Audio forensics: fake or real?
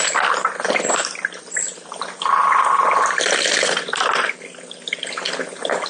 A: real